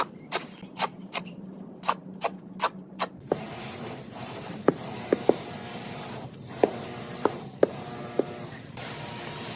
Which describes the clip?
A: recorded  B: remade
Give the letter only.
B